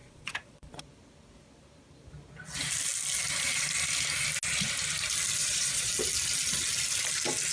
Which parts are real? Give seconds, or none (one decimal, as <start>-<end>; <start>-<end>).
0.8-5.4; 5.9-7.5